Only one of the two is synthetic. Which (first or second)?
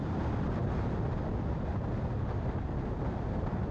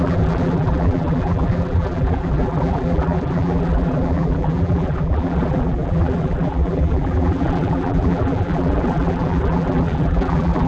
second